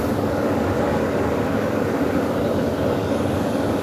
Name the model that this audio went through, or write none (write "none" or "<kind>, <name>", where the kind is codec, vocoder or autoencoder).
codec, DAC